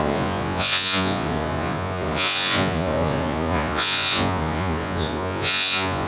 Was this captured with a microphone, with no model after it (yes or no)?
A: no